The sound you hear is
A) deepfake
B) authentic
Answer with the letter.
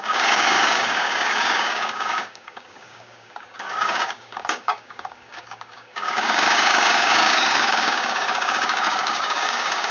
A